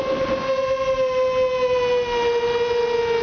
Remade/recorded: recorded